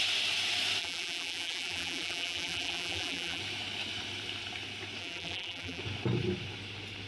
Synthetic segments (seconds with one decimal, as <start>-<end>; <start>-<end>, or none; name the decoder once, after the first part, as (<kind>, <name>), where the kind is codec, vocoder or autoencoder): 0.8-3.4 (vocoder, BigVGAN v2); 5.0-5.8

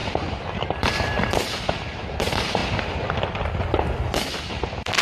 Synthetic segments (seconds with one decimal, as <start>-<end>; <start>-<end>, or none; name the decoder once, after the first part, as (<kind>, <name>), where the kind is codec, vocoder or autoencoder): 0.0-2.6 (vocoder, BigVGAN v2); 4.5-5.0

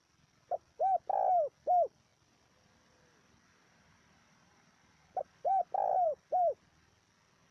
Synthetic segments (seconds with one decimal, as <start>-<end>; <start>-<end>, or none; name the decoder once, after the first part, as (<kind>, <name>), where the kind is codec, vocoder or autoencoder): 2.1-6.6 (vocoder, BigVGAN v2)

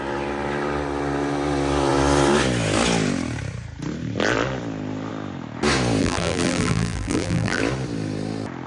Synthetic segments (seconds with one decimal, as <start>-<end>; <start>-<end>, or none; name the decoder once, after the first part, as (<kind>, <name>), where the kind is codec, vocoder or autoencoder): 6.0-7.6 (vocoder, BigVGAN v2)

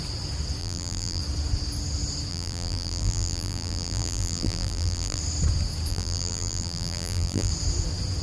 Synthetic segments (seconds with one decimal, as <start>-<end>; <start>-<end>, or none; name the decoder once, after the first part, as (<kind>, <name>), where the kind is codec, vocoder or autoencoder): 0.6-1.2 (vocoder, BigVGAN v2); 2.3-5.2; 5.9-7.5

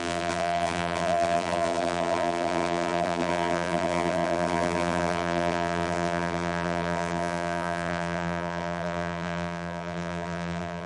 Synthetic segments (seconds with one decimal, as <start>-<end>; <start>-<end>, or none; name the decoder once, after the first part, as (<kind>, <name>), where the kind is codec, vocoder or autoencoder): 0.0-10.9 (vocoder, BigVGAN v2)

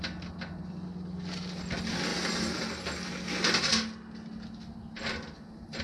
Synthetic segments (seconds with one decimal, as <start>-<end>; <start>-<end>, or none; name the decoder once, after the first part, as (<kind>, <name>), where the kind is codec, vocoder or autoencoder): none